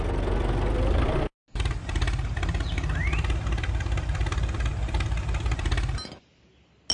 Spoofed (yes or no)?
no